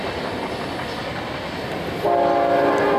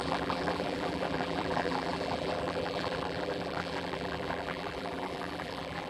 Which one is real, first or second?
first